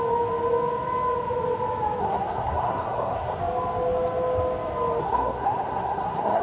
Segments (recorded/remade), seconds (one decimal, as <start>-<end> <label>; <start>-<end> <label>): 0.0-2.0 recorded; 2.0-3.4 remade; 3.4-5.0 recorded; 5.0-6.4 remade